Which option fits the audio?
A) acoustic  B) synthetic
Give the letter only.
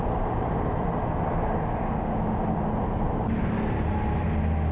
A